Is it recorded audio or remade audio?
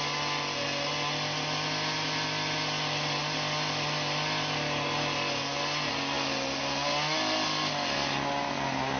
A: recorded